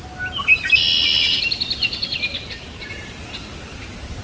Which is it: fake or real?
real